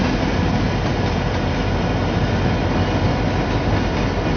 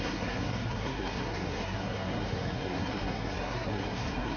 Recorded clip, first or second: first